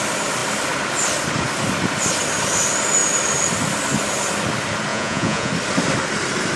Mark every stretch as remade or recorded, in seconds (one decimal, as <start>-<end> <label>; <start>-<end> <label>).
0.0-4.9 recorded; 4.9-5.5 remade; 5.5-6.6 recorded